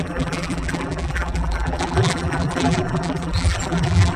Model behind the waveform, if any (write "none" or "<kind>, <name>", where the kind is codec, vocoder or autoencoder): vocoder, BigVGAN v2